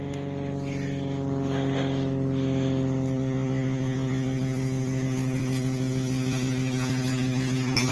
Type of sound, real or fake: real